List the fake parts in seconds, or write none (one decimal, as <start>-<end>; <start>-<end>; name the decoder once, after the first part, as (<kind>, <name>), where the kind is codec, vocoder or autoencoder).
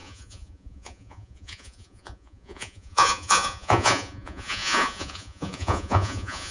0.0-6.5 (vocoder, Vocos)